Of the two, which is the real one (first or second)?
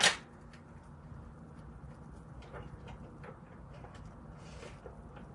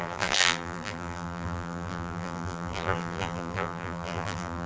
first